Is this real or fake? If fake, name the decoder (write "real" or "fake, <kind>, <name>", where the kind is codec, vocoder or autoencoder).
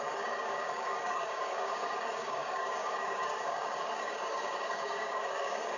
fake, codec, DAC